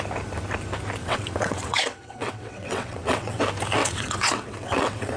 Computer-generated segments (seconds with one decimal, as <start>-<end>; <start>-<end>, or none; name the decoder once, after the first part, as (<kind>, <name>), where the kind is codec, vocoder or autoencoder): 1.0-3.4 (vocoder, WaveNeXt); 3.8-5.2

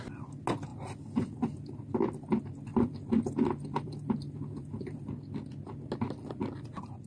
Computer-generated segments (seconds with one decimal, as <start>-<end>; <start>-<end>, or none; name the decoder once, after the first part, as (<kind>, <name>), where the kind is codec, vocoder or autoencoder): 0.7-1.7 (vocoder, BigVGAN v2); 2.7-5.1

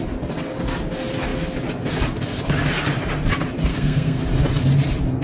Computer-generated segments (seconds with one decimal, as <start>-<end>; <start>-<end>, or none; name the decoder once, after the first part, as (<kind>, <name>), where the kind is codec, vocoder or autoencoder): 3.7-4.2 (codec, SNAC)

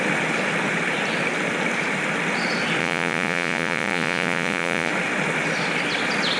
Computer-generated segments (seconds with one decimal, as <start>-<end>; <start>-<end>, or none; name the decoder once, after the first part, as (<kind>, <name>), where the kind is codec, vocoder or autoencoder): 2.8-4.9 (vocoder, Vocos)

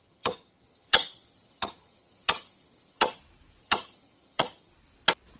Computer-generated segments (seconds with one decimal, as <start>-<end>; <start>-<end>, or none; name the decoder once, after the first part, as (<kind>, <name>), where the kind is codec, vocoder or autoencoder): 0.0-3.2 (vocoder, HiFi-GAN); 3.6-4.7